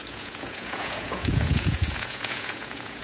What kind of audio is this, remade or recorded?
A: remade